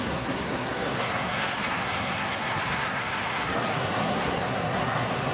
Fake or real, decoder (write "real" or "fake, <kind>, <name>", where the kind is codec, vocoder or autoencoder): fake, codec, SNAC